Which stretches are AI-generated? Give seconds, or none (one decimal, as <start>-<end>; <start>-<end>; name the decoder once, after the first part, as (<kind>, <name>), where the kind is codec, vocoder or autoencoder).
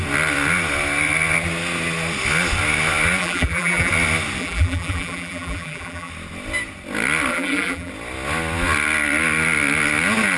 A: 3.2-3.9 (vocoder, BigVGAN v2); 4.4-6.1; 7.3-7.9